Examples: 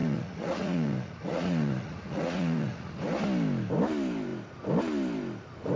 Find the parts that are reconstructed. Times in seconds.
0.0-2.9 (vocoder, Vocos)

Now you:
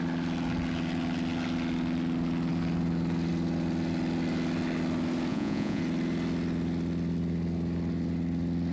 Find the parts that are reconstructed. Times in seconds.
5.3-5.8 (vocoder, Vocos)